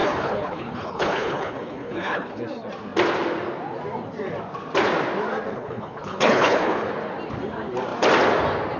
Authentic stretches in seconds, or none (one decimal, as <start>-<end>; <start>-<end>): 2.4-5.5; 6.9-8.8